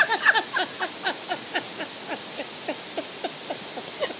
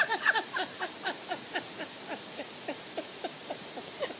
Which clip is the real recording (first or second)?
first